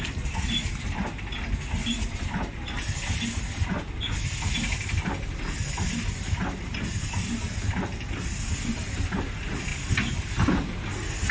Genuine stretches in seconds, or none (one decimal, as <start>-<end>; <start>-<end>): 0.0-11.3